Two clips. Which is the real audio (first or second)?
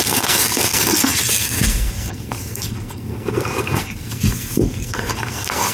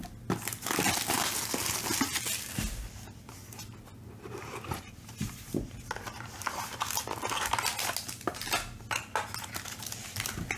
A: second